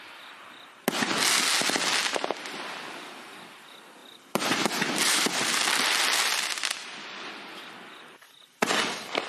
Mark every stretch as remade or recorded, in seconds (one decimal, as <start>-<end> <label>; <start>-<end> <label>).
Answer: 0.0-4.0 recorded; 4.0-7.3 remade; 7.3-9.3 recorded